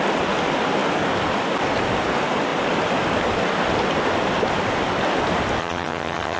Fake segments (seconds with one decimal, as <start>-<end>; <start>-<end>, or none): 5.6-6.4